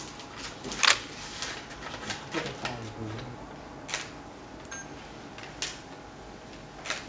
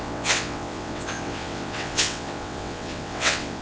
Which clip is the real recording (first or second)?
first